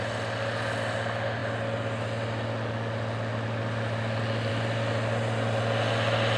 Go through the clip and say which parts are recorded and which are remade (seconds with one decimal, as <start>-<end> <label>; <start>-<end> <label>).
0.0-6.4 recorded